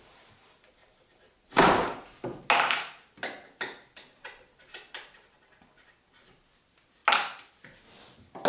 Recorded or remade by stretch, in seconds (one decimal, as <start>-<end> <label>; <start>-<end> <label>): 0.0-8.5 recorded